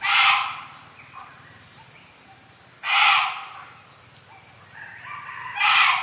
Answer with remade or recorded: recorded